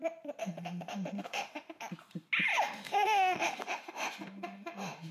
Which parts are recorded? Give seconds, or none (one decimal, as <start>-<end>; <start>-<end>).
0.0-0.4; 1.8-2.5